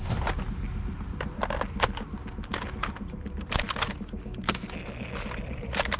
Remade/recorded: recorded